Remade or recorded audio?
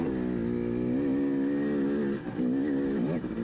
recorded